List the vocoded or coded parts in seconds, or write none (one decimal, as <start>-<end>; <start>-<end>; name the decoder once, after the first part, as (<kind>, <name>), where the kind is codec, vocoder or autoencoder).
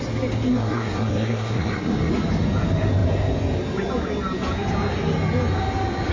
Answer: 0.5-2.1 (codec, SNAC)